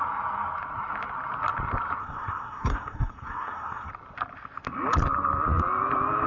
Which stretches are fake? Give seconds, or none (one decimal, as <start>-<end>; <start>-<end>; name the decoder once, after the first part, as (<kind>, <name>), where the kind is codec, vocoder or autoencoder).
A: 2.0-3.9 (codec, SNAC)

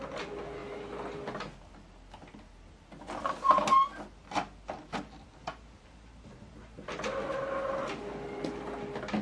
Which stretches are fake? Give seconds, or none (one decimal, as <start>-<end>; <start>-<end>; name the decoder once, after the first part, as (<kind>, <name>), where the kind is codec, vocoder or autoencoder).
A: none

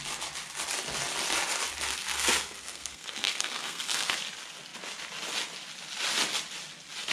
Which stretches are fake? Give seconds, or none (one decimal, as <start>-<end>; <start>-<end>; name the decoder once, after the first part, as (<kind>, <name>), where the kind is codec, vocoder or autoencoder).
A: 1.9-4.1 (codec, SNAC)

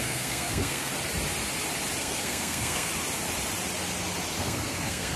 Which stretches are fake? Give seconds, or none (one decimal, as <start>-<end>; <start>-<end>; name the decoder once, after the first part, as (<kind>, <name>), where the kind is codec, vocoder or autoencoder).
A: 0.0-0.9 (codec, SNAC); 2.0-2.9; 4.4-5.2

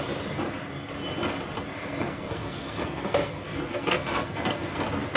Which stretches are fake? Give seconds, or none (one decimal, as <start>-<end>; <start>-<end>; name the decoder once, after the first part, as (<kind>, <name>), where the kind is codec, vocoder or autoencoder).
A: 1.7-4.8 (codec, SNAC)

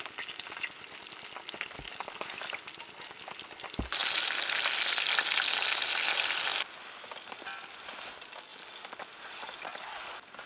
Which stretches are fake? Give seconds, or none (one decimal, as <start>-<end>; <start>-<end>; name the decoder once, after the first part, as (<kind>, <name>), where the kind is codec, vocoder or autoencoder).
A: none

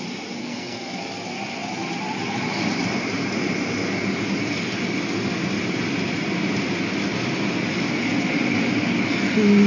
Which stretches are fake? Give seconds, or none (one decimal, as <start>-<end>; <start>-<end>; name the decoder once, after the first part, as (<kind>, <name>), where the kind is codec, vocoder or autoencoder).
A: 0.4-1.0 (codec, SNAC)